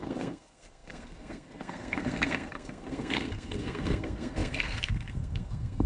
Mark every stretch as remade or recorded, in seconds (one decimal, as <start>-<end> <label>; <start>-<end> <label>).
0.0-5.9 remade